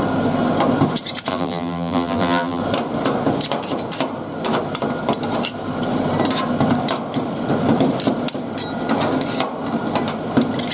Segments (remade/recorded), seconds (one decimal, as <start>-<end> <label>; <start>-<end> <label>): 0.0-1.3 recorded; 1.3-2.6 remade; 2.6-10.7 recorded